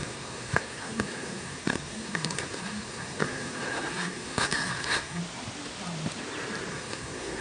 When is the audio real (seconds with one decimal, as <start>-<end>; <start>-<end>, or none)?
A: 5.2-6.7